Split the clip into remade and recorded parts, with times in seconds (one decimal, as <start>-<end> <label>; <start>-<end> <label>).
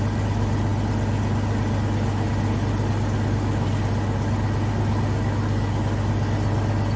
0.0-7.0 recorded